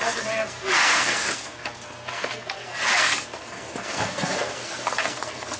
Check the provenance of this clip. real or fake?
fake